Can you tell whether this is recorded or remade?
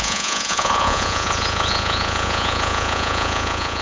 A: remade